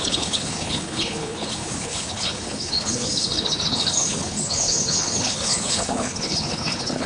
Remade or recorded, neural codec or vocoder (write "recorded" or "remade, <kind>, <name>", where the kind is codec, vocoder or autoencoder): remade, codec, HILCodec